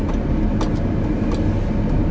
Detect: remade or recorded recorded